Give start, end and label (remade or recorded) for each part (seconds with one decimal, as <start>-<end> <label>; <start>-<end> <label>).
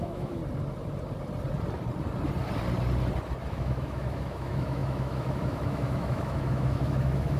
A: 0.0-0.4 remade; 0.4-3.5 recorded; 3.5-7.4 remade